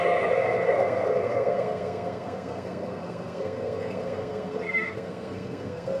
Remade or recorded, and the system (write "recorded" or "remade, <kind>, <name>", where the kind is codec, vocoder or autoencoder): remade, codec, SNAC